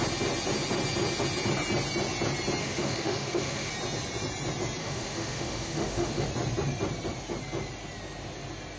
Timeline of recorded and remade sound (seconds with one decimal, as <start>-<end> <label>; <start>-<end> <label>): 0.0-2.6 recorded; 2.6-3.7 remade; 3.7-4.8 recorded; 4.8-6.3 remade; 6.3-8.8 recorded